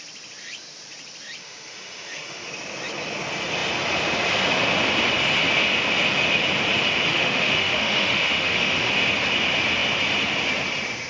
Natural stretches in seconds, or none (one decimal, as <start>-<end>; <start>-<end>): 0.0-1.4; 2.5-7.1; 8.9-11.1